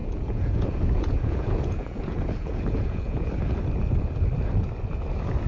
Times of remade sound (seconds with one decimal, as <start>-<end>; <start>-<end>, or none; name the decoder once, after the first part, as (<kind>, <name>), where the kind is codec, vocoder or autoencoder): 0.0-3.3 (vocoder, Vocos)